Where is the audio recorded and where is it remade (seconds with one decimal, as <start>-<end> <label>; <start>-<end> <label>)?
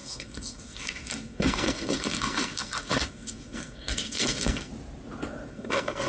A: 0.0-4.7 remade; 4.7-5.5 recorded; 5.5-6.1 remade